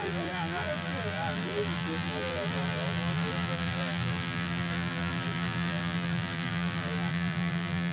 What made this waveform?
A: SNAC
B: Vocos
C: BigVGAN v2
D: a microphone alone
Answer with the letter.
C